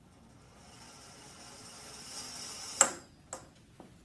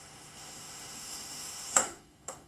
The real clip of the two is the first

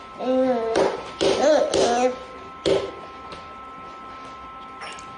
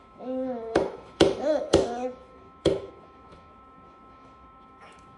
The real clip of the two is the first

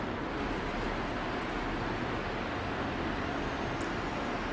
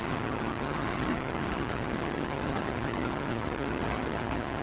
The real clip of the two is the first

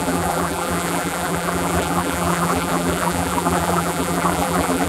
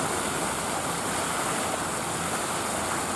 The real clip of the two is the second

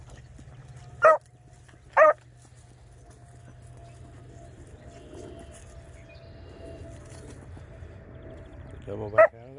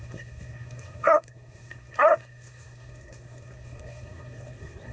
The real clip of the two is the first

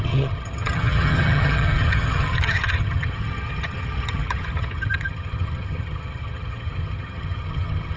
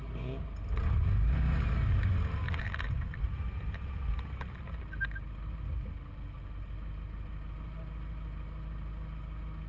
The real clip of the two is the second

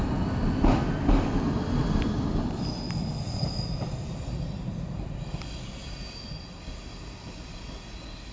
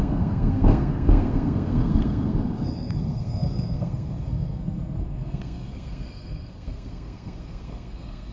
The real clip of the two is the first